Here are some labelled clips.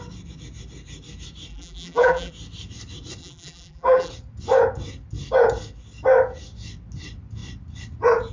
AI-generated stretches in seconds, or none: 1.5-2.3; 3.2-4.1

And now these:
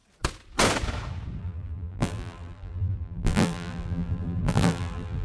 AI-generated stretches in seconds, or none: 1.4-5.2

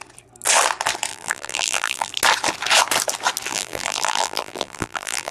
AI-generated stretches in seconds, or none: 1.1-2.1; 3.5-5.3

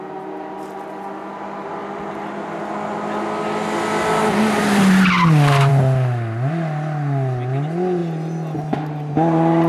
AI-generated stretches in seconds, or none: none

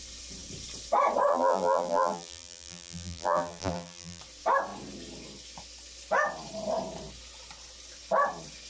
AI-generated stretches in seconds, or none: 1.3-4.2